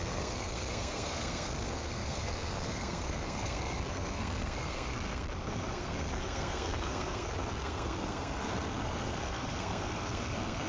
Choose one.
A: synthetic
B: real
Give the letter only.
A